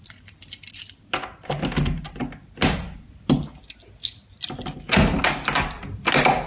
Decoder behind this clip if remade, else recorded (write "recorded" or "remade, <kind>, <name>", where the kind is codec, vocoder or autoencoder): recorded